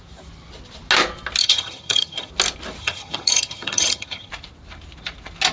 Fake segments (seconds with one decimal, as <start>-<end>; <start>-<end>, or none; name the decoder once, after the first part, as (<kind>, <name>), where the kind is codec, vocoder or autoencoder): 1.4-2.3 (vocoder, HiFi-GAN); 2.8-4.3